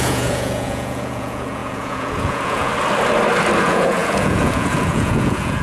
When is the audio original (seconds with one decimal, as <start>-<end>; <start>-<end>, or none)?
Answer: 2.7-3.6